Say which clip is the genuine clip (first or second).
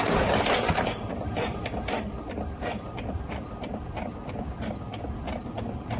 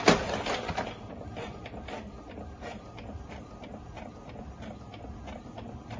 second